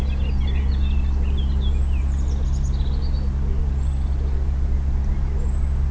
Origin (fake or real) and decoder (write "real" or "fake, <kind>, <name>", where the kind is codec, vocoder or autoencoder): real